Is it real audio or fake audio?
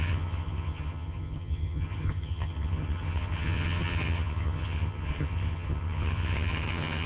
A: fake